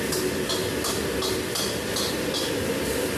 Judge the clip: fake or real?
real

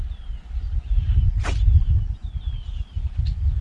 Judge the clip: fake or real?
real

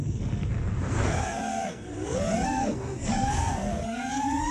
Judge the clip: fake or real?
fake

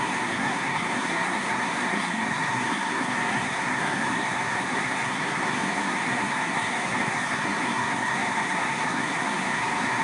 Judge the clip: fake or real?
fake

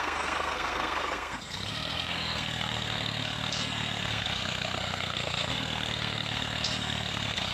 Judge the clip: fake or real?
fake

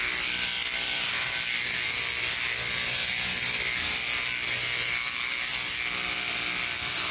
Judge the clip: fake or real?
real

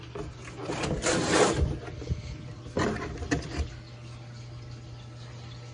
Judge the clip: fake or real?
real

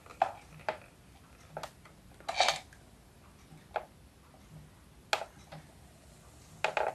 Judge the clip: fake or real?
real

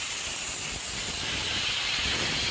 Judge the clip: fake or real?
real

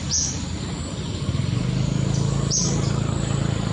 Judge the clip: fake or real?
real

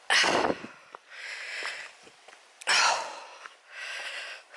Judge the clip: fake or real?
real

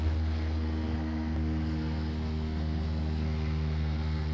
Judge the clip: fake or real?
fake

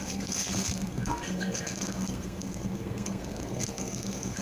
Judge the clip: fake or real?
fake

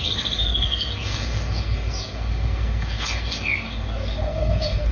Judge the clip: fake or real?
fake